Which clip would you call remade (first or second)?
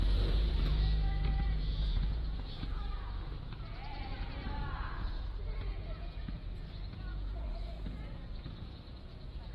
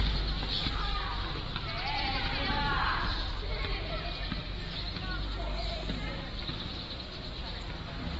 first